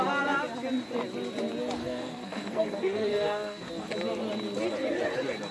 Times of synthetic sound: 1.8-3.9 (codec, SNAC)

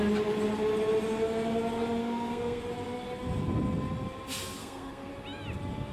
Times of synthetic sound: 2.0-2.6 (codec, SNAC); 4.6-5.1

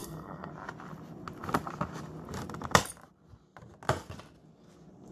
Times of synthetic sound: 0.0-0.5 (codec, SNAC)